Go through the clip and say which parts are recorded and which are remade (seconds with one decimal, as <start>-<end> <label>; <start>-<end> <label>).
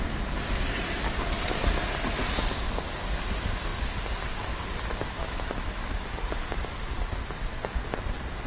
0.0-5.2 recorded; 5.2-6.0 remade; 6.0-8.5 recorded